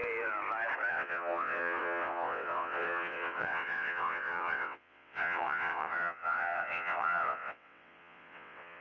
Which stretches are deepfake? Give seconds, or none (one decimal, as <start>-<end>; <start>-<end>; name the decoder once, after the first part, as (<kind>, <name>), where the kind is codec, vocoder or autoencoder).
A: 0.9-8.8 (vocoder, WaveNeXt)